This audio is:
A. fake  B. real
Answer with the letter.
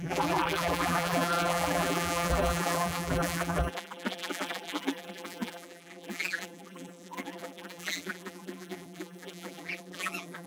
A